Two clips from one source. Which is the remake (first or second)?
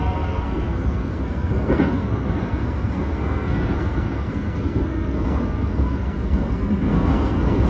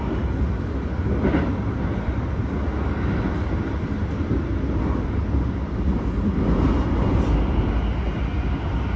first